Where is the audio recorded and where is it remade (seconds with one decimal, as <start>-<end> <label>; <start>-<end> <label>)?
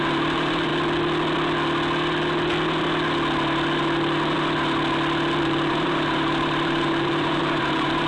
0.0-0.7 remade; 0.7-5.4 recorded; 5.4-8.1 remade